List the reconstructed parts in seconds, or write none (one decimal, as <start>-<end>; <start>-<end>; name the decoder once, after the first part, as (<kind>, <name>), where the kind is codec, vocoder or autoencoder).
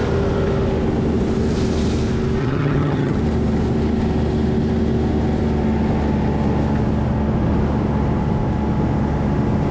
2.4-3.2 (vocoder, HiFi-GAN)